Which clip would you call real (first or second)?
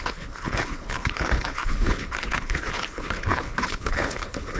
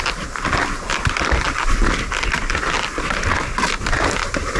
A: second